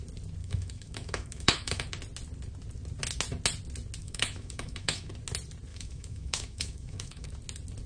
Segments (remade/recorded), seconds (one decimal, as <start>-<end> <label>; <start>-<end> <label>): 0.0-0.4 recorded; 0.4-1.9 remade; 1.9-4.0 recorded; 4.0-5.1 remade; 5.1-5.7 recorded; 5.7-7.3 remade; 7.3-7.9 recorded